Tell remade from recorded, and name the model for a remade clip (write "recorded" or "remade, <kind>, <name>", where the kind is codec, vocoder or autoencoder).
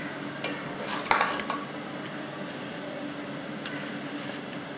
recorded